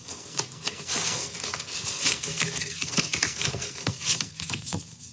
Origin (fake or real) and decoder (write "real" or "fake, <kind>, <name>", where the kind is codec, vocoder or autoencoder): fake, codec, SNAC